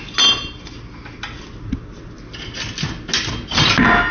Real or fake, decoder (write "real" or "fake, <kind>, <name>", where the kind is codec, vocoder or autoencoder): real